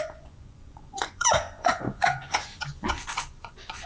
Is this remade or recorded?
remade